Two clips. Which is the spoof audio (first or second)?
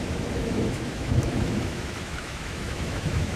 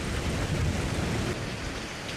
first